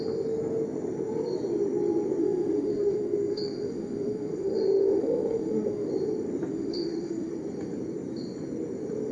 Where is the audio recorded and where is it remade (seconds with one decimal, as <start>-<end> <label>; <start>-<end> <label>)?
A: 0.0-2.2 recorded; 2.2-5.9 remade; 5.9-6.5 recorded; 6.5-7.3 remade; 7.3-9.1 recorded